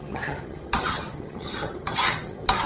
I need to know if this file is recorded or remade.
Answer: remade